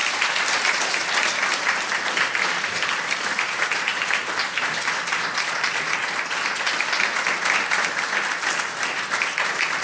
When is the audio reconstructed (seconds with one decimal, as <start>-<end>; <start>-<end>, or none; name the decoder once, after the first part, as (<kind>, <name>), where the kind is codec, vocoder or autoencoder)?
none